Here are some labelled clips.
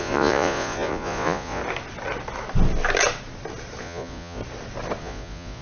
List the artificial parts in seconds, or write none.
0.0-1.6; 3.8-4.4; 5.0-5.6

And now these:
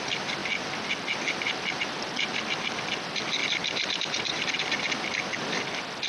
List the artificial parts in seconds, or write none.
none

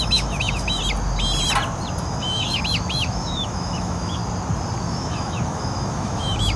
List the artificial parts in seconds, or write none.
0.0-0.8; 2.0-4.2; 4.8-6.6

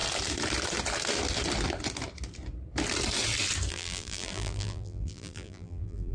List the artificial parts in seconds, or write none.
3.7-6.1

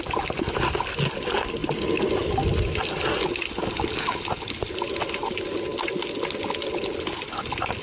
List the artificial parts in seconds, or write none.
none

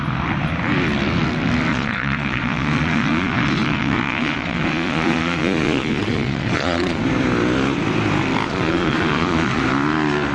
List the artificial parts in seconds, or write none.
1.7-7.0; 8.5-9.6

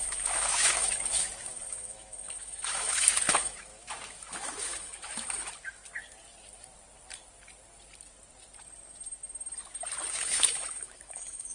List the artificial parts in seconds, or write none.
0.0-5.8; 10.1-11.5

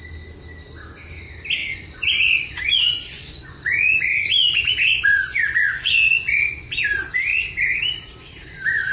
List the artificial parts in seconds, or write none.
1.6-6.8